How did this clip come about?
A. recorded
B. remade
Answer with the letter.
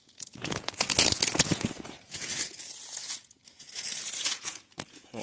B